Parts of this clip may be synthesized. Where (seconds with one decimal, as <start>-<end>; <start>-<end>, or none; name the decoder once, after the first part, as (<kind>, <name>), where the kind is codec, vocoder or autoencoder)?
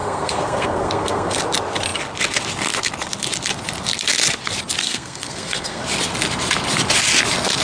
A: 0.0-1.4 (codec, SNAC); 4.8-5.8